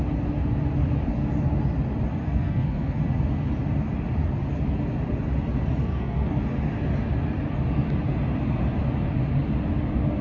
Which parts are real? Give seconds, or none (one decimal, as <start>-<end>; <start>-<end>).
0.0-2.2; 3.0-5.9; 6.4-10.2